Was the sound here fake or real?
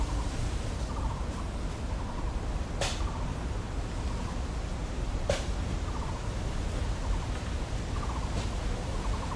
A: real